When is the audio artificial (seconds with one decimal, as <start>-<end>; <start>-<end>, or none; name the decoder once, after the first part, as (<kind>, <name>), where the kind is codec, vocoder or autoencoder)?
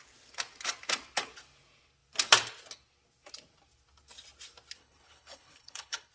4.8-6.1 (codec, HILCodec)